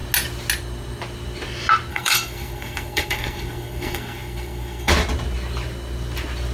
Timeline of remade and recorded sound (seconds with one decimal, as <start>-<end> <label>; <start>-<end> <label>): 0.0-1.9 recorded; 1.9-4.9 remade; 4.9-6.5 recorded